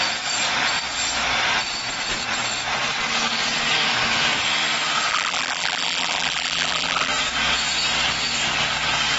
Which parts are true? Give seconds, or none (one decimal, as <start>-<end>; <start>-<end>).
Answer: 0.0-5.1; 7.1-9.2